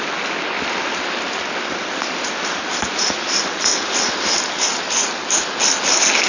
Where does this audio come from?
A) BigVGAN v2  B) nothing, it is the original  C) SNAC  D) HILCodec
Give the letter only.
B